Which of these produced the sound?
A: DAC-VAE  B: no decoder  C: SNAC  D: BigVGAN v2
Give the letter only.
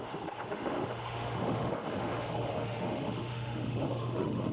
A